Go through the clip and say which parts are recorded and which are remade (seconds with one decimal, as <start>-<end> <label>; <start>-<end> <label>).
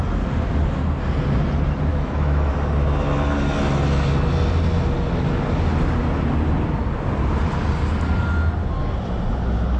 0.0-1.9 recorded; 1.9-2.5 remade; 2.5-9.8 recorded